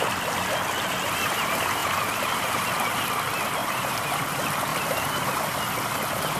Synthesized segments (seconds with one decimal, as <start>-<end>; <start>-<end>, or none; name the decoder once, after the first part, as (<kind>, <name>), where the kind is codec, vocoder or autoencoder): 1.8-2.5 (vocoder, BigVGAN v2); 3.6-4.2; 4.7-5.4

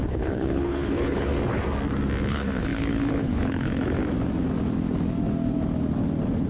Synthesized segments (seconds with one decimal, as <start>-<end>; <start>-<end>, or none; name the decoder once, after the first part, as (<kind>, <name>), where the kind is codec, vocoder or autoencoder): 0.0-1.3 (codec, HILCodec); 2.3-4.0

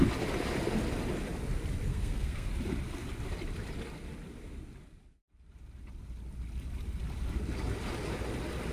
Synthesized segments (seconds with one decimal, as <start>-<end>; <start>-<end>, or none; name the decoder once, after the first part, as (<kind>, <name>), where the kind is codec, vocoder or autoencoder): 1.9-2.5 (codec, SNAC)

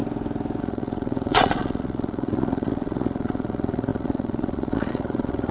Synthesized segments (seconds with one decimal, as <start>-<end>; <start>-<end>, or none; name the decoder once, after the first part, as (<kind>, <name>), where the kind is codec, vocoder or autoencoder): 0.6-5.5 (vocoder, Vocos)

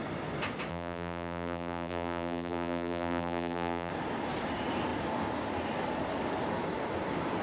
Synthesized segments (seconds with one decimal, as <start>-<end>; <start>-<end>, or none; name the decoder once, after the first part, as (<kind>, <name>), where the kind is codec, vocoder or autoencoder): 0.7-3.9 (vocoder, BigVGAN v2)

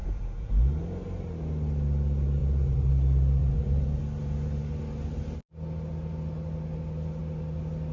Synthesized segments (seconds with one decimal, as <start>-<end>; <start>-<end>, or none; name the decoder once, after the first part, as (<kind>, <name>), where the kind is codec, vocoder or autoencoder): 0.0-0.5 (vocoder, Vocos); 2.4-2.9; 3.4-4.0

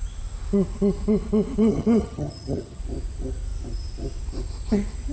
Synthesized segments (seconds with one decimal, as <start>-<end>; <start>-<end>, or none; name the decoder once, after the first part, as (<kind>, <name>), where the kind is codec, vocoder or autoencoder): 1.6-2.8 (vocoder, HiFi-GAN)

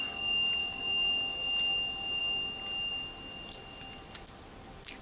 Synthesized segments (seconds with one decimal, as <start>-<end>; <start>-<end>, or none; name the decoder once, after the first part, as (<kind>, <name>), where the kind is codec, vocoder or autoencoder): 0.6-1.1 (autoencoder, DAC-VAE)